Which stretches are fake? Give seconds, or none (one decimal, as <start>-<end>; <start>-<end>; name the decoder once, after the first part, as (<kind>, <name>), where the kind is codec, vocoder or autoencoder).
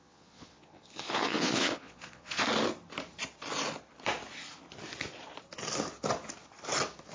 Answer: 0.0-2.4 (vocoder, Vocos)